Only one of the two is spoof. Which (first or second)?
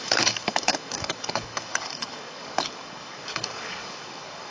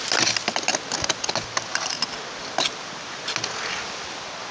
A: first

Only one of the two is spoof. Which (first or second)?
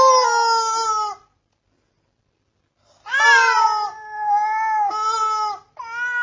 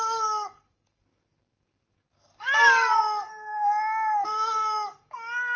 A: second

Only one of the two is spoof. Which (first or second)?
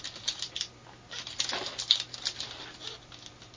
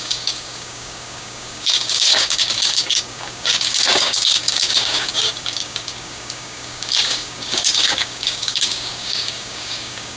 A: second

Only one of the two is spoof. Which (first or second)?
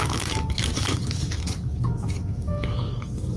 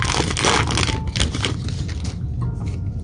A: first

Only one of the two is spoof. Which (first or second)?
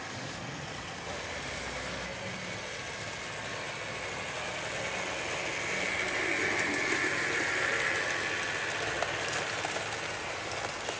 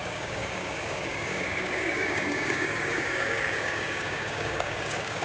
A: second